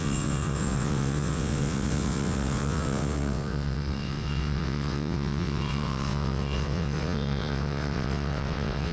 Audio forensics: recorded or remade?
remade